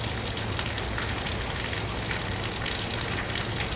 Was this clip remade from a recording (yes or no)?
no